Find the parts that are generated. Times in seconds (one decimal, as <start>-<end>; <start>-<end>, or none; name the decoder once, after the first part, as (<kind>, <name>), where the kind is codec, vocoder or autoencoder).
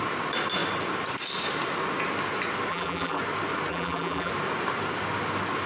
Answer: 2.7-3.2 (vocoder, BigVGAN v2); 3.7-4.3